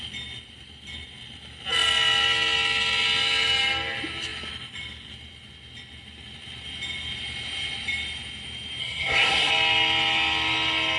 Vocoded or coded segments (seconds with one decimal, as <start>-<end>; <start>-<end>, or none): 8.8-9.5